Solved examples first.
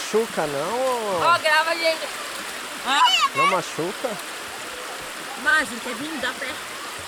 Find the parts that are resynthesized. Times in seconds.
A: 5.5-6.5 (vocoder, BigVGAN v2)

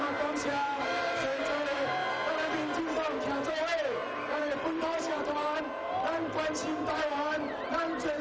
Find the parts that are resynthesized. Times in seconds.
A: 0.0-2.0 (vocoder, BigVGAN v2); 3.5-8.2